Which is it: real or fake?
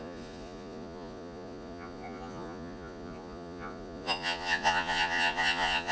fake